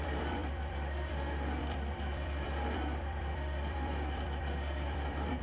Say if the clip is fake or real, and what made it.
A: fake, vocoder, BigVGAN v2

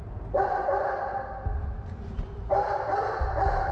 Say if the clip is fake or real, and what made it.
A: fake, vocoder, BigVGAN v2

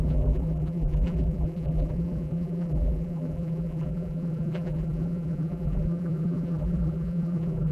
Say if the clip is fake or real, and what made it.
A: fake, vocoder, BigVGAN v2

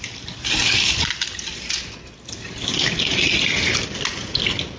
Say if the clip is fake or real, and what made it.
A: real